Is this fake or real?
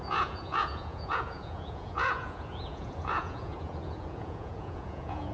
fake